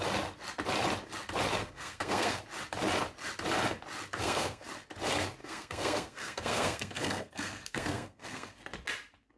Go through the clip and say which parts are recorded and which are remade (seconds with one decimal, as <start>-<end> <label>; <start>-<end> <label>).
0.0-1.6 recorded; 1.6-2.4 remade; 2.4-4.2 recorded; 4.2-4.7 remade; 4.7-5.4 recorded; 5.4-8.6 remade; 8.6-9.4 recorded